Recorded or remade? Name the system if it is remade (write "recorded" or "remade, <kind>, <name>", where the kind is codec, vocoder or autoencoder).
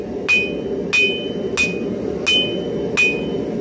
recorded